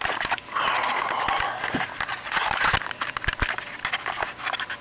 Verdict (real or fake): real